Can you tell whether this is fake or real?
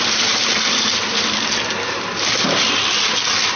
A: real